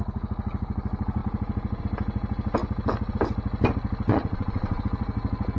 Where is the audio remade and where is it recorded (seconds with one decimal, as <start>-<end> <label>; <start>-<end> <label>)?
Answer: 0.0-4.1 recorded; 4.1-4.8 remade; 4.8-5.6 recorded